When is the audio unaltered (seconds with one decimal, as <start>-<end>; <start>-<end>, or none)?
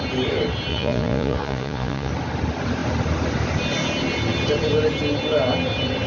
0.0-0.7; 2.1-6.1